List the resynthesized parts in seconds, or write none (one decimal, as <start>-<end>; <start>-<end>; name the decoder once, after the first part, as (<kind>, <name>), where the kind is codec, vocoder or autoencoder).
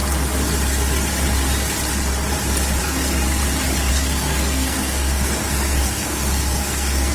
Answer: 2.8-3.4 (codec, SNAC); 3.9-7.1